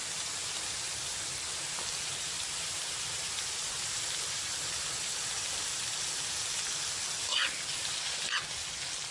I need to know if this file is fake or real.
real